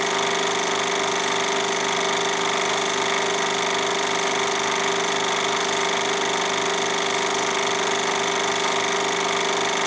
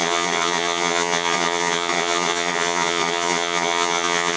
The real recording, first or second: first